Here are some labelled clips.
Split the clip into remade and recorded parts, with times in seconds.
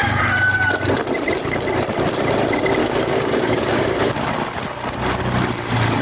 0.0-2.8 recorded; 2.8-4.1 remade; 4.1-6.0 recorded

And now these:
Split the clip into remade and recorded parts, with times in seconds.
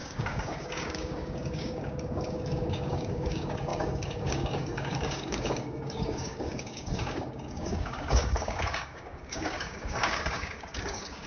0.0-11.3 remade